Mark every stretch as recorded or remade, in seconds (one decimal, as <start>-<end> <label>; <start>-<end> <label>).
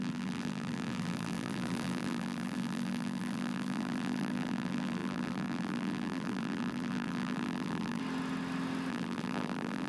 0.0-8.0 remade; 8.0-8.9 recorded; 8.9-9.9 remade